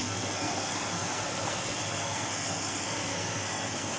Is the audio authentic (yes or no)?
no